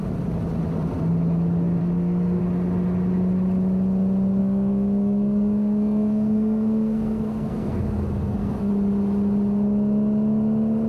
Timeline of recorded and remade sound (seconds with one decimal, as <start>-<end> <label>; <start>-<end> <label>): 0.0-1.8 recorded; 1.8-2.4 remade; 2.4-4.4 recorded; 4.4-8.7 remade; 8.7-10.9 recorded